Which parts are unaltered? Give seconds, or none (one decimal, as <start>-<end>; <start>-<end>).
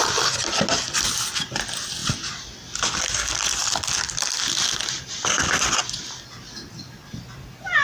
0.0-7.8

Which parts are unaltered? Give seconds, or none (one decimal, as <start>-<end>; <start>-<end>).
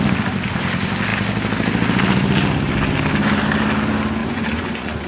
0.0-4.2